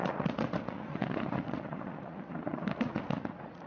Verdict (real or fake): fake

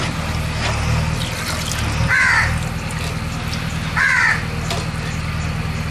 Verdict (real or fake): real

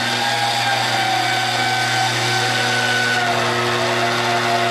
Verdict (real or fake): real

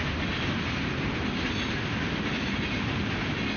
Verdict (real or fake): real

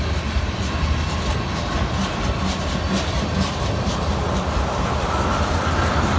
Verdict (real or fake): real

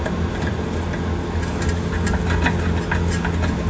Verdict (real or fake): real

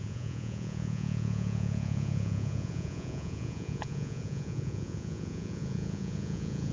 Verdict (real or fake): fake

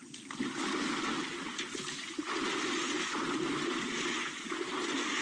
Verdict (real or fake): real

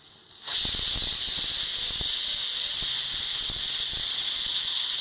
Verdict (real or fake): real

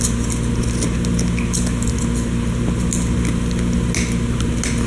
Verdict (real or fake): real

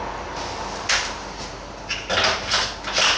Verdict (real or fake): real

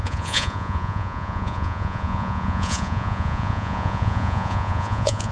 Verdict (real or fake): fake